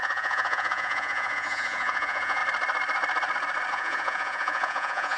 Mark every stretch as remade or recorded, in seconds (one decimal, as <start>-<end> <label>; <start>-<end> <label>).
0.0-2.4 remade; 2.4-3.7 recorded; 3.7-5.2 remade